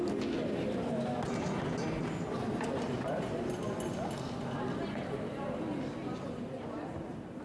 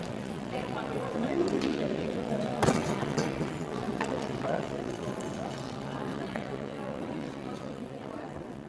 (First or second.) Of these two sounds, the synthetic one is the second